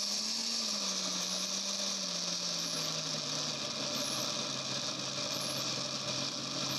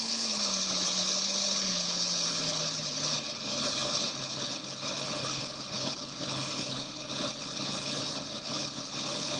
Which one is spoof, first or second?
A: second